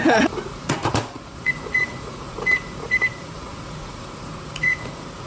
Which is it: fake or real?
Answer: fake